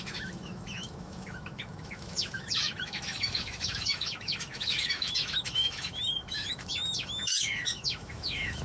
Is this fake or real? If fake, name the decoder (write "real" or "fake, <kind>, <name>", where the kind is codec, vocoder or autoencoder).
fake, autoencoder, DAC-VAE